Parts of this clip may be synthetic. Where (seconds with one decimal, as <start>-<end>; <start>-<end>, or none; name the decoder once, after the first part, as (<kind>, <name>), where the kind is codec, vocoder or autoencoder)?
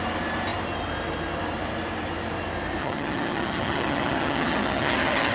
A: 2.8-5.3 (vocoder, HiFi-GAN)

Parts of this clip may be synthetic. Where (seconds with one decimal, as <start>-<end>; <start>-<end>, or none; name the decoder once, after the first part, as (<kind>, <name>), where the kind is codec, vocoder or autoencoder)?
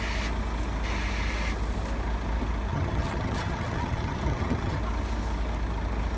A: 2.7-4.8 (vocoder, HiFi-GAN)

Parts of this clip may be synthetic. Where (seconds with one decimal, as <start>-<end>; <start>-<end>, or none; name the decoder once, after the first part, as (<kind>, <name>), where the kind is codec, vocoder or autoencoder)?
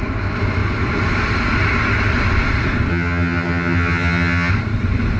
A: 2.9-4.5 (vocoder, HiFi-GAN)